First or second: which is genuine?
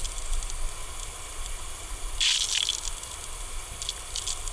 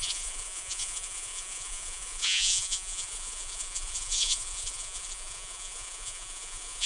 first